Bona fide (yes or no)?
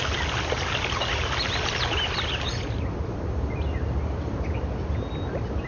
yes